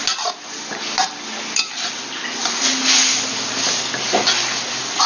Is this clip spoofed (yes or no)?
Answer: no